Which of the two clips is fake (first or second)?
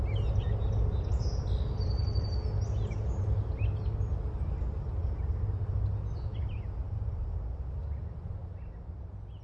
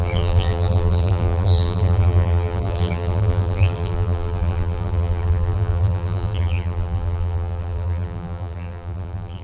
second